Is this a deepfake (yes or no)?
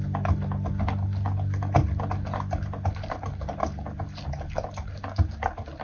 no